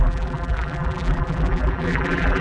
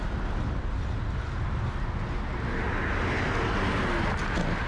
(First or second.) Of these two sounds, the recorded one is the second